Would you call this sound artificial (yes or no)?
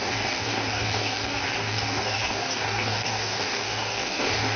yes